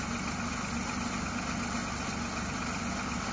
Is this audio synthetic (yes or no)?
no